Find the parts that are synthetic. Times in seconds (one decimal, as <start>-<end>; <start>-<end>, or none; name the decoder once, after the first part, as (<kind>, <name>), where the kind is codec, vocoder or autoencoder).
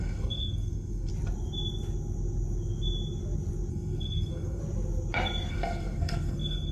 0.0-1.1 (codec, SNAC); 3.7-4.6; 5.5-6.7